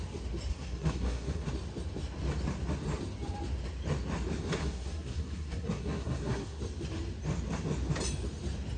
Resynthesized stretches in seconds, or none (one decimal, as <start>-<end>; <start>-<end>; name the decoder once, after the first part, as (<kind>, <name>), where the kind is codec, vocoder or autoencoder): 0.5-1.5 (codec, SNAC); 4.6-6.6